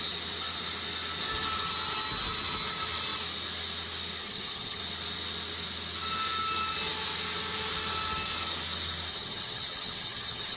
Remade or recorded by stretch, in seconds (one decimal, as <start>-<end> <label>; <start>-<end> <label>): 0.0-4.2 recorded; 4.2-4.8 remade; 4.8-9.1 recorded; 9.1-10.6 remade